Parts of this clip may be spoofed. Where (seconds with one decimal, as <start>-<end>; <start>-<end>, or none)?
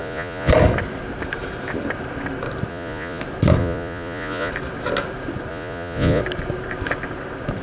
0.0-0.5; 2.7-3.2; 3.6-4.5; 5.5-6.2